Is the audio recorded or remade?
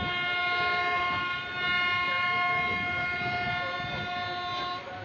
recorded